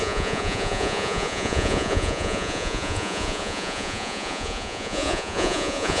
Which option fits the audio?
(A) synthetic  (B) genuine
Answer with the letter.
A